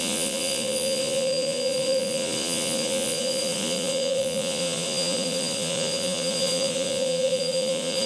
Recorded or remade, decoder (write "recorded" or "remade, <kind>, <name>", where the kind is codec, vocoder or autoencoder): remade, vocoder, Vocos